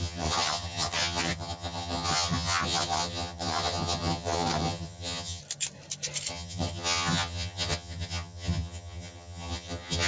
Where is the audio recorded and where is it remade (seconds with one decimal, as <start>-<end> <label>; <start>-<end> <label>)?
0.0-5.4 remade; 5.4-6.3 recorded; 6.3-10.1 remade